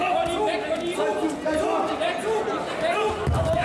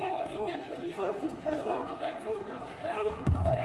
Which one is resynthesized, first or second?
second